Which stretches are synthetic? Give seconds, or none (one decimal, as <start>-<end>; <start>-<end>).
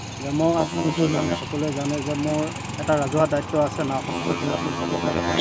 0.6-1.4; 4.1-5.4